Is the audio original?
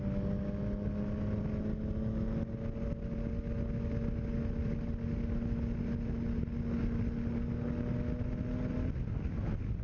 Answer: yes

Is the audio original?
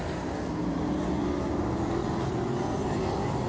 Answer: yes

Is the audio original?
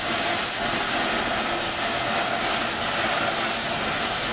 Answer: yes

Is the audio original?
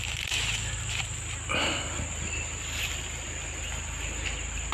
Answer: yes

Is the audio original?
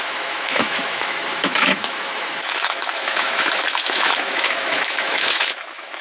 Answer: no